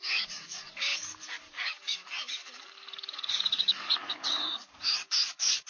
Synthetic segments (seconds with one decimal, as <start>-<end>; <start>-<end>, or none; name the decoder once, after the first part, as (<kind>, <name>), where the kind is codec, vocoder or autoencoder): 0.0-5.7 (codec, DAC)